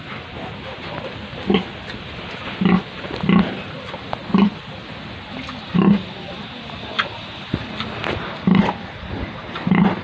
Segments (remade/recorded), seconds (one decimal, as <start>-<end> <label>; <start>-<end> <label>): 0.0-10.0 recorded